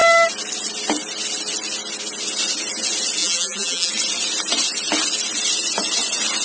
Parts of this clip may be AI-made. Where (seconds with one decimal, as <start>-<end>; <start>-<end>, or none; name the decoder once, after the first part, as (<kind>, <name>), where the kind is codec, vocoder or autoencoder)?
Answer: 3.2-3.9 (vocoder, BigVGAN v2)